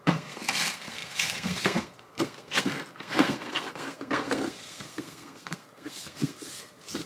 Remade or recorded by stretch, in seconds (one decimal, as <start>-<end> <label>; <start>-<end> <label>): 0.0-7.1 remade